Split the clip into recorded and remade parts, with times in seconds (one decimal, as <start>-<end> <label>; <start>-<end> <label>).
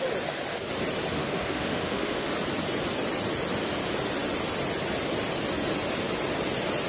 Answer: 0.0-1.1 recorded; 1.1-2.3 remade; 2.3-6.9 recorded